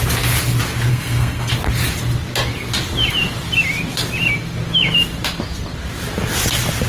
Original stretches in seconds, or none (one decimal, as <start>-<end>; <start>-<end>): 0.0-0.9; 1.5-6.9